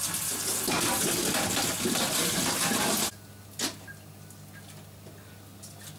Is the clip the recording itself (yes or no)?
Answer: yes